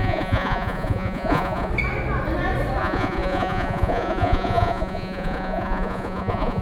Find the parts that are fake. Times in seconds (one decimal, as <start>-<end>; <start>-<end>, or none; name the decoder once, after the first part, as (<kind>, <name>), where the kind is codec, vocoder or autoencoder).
0.0-1.7 (vocoder, Vocos); 2.8-6.6